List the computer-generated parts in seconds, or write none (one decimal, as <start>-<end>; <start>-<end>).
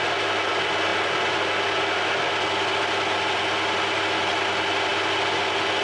none